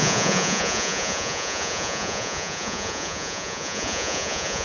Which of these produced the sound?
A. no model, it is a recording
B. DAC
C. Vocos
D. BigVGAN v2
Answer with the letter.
C